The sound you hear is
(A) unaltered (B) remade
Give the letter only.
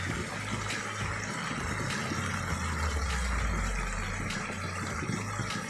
A